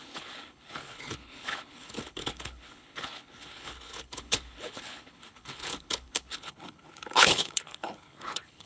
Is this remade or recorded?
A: remade